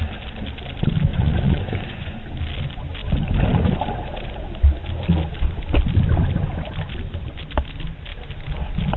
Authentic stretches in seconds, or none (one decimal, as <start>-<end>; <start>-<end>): 0.0-1.1; 2.2-9.0